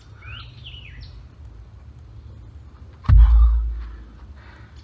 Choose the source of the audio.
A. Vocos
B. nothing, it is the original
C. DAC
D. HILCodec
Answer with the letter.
B